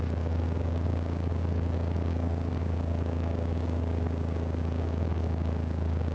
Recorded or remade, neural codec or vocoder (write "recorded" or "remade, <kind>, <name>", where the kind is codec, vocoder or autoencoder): remade, codec, DAC